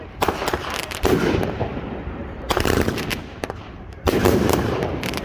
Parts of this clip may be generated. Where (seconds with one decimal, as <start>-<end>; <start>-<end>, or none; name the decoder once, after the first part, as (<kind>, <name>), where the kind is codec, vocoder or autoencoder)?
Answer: 0.0-5.2 (vocoder, BigVGAN v2)